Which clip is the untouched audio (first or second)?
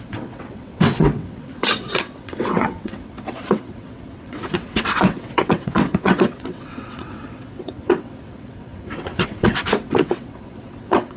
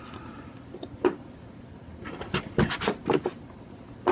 second